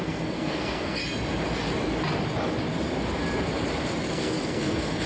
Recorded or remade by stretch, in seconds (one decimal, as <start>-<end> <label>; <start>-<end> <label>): 0.0-1.0 remade; 1.0-4.1 recorded; 4.1-5.1 remade

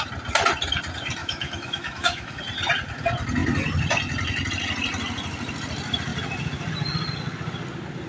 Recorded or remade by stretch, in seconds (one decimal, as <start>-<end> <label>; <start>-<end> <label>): 0.0-1.2 recorded; 1.2-2.4 remade; 2.4-8.1 recorded

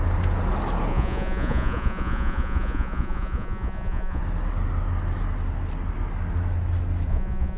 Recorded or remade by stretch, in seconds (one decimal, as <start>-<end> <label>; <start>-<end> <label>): 0.0-0.9 recorded; 0.9-4.2 remade; 4.2-7.1 recorded; 7.1-7.6 remade